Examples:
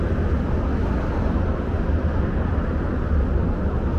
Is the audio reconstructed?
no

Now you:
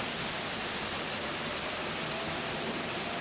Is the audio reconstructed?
no